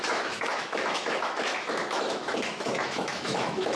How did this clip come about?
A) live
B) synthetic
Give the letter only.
B